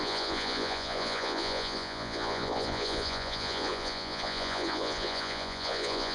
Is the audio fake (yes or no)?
yes